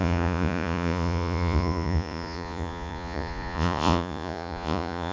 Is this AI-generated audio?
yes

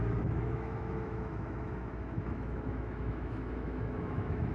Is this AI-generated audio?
yes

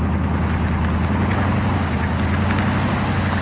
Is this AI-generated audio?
no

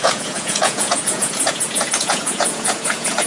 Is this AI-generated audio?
yes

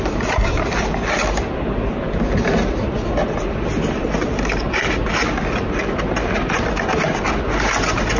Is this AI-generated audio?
no